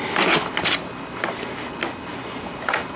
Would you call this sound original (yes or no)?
yes